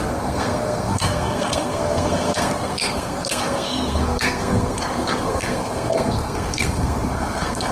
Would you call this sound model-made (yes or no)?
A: yes